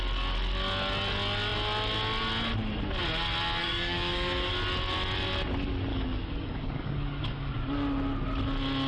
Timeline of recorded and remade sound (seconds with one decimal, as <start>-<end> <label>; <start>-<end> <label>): 0.0-3.6 recorded; 3.6-4.5 remade; 4.5-5.9 recorded; 5.9-7.5 remade; 7.5-8.9 recorded